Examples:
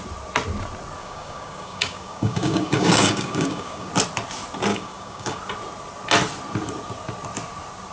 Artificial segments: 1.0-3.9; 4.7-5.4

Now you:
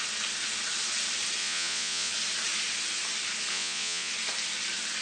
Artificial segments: 1.4-2.1; 3.5-4.1